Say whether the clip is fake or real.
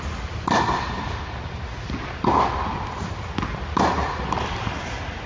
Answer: real